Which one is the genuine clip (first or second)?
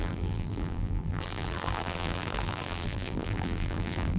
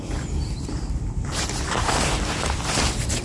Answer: second